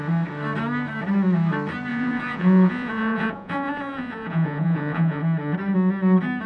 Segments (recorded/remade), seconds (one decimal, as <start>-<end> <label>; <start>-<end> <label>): 0.0-1.9 recorded; 1.9-5.2 remade; 5.2-6.5 recorded